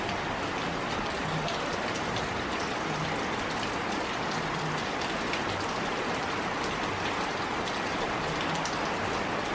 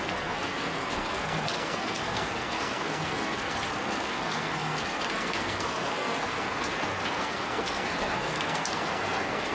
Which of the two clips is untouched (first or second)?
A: first